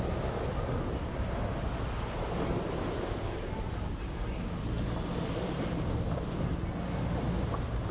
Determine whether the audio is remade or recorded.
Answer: recorded